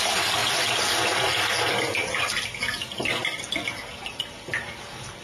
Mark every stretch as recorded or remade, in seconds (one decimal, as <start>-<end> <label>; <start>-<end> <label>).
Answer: 0.0-5.2 recorded